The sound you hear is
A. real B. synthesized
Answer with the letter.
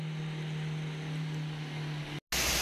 A